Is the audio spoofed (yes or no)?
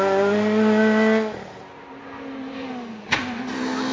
no